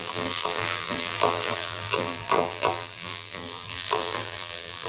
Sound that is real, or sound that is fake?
fake